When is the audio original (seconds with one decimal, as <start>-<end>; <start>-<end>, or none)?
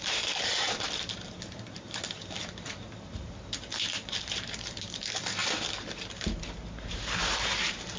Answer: none